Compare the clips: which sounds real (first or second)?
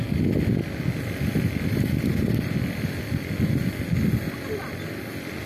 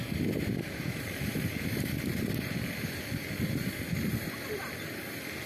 first